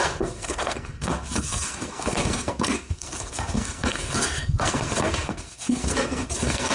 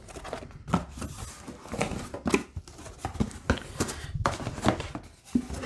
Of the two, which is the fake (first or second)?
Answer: first